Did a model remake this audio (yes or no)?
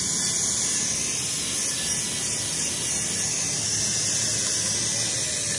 no